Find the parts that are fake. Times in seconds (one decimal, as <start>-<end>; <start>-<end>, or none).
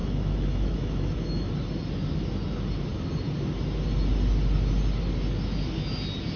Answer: 0.0-1.5